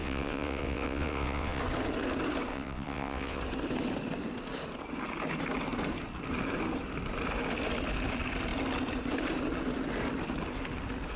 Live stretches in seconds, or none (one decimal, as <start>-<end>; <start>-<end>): 1.6-2.5; 3.4-11.2